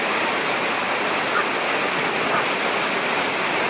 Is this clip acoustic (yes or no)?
yes